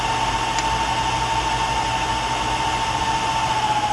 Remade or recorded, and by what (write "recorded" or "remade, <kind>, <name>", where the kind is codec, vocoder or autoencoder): recorded